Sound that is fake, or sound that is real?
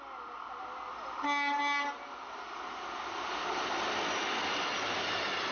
real